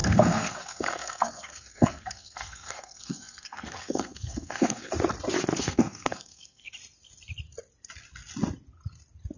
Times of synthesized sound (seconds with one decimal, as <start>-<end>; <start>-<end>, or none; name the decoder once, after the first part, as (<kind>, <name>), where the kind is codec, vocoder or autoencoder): 0.0-4.9 (codec, SNAC); 5.6-6.7